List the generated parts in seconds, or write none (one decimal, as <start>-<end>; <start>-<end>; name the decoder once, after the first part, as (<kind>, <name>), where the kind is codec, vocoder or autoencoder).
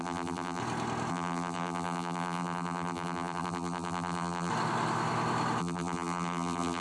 0.0-0.6 (vocoder, BigVGAN v2); 1.1-4.5; 5.6-6.8